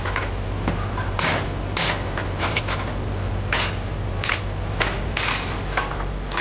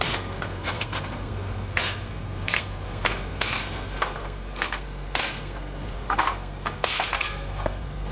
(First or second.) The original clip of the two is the first